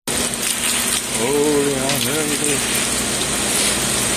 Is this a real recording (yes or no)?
yes